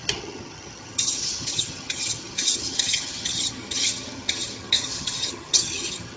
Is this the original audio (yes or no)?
no